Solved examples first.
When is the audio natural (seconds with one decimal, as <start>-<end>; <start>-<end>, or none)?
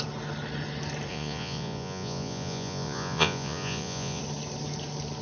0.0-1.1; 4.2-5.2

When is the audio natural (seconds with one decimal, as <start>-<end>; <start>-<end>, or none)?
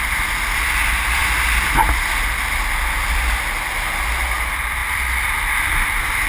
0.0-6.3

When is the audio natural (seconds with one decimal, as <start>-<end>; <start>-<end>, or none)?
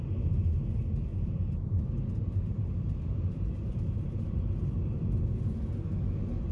0.0-1.1; 4.5-6.5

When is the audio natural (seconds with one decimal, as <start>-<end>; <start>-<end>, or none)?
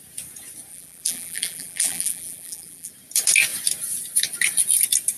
0.0-0.7; 2.9-5.2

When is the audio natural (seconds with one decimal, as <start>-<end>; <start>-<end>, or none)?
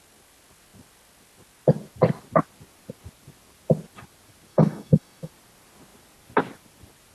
0.0-4.5; 5.3-7.1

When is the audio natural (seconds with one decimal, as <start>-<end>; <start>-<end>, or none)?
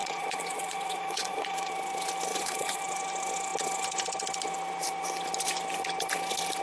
1.7-2.3; 2.8-6.6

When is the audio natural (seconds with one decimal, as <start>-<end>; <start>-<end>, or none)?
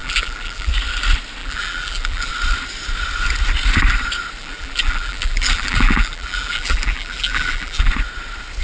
0.7-1.4; 2.3-4.4; 7.9-8.6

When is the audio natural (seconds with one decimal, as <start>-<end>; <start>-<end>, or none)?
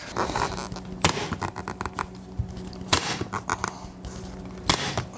0.0-5.2